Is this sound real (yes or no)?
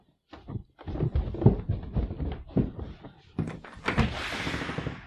yes